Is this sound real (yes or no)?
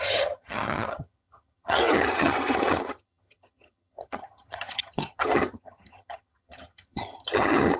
no